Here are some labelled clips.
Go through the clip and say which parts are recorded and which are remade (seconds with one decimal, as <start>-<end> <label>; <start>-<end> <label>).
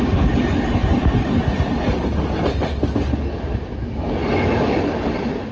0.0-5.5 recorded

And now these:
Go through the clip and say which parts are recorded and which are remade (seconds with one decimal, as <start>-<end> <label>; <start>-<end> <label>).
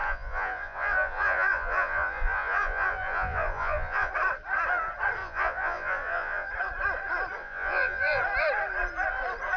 0.0-4.1 remade; 4.1-5.2 recorded; 5.2-6.5 remade; 6.5-7.4 recorded; 7.4-8.2 remade; 8.2-9.6 recorded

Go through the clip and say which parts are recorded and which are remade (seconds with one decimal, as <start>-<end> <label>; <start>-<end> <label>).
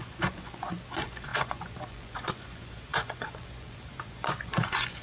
0.0-5.0 remade